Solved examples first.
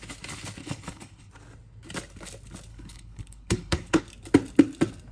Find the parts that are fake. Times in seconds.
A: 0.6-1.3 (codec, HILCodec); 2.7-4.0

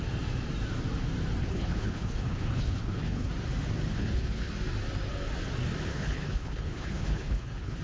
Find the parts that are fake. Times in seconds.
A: 1.4-3.3 (codec, HILCodec); 3.9-4.5; 5.9-7.8